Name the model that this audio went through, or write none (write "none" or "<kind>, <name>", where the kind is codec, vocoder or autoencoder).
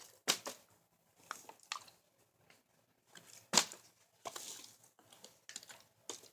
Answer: none